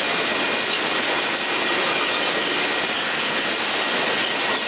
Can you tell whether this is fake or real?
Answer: real